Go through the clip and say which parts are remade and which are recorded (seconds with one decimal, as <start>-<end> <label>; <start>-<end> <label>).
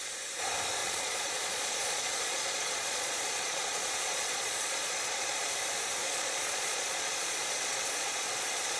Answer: 0.0-0.8 recorded; 0.8-5.5 remade; 5.5-6.0 recorded; 6.0-8.8 remade